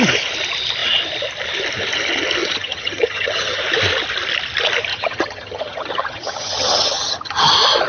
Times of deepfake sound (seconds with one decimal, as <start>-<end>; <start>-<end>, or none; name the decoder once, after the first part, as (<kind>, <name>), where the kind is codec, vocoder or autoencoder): 2.4-3.6 (vocoder, HiFi-GAN); 4.9-7.5